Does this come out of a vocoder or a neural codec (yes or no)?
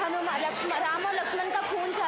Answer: no